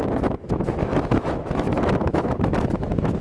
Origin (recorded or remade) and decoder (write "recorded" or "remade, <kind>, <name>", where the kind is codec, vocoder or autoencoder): remade, autoencoder, DAC-VAE